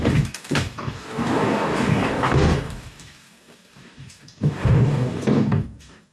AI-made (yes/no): yes